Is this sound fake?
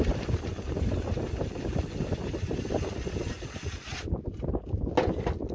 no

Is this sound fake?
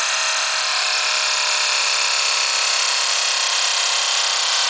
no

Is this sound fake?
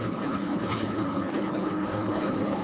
yes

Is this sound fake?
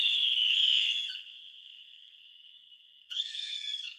yes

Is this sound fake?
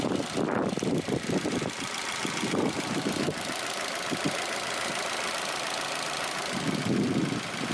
no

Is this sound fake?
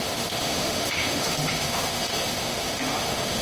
yes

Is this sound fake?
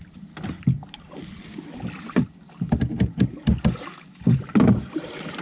no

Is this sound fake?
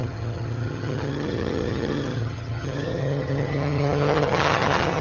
yes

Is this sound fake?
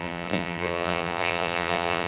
yes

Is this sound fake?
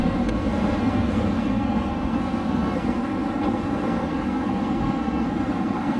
yes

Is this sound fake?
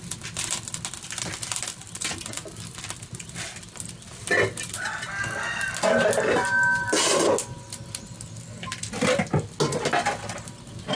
no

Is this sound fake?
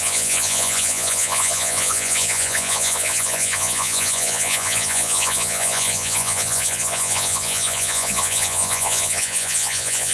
yes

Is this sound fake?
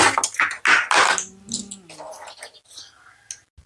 no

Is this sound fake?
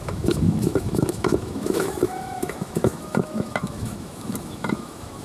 yes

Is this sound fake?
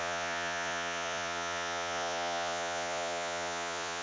yes